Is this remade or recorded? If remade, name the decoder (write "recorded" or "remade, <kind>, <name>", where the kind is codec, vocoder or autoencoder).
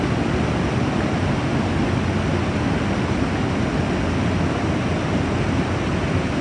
recorded